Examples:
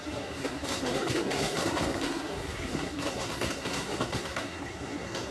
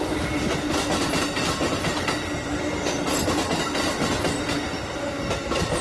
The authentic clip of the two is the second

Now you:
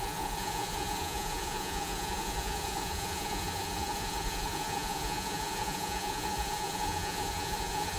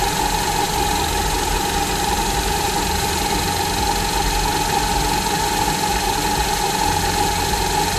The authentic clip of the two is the second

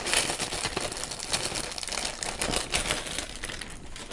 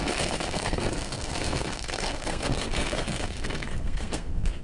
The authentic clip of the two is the first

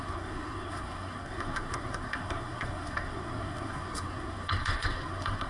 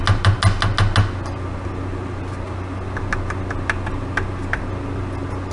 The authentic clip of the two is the second